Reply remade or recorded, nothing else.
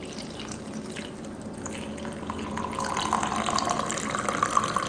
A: recorded